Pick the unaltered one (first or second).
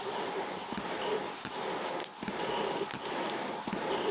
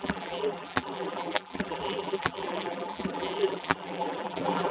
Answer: first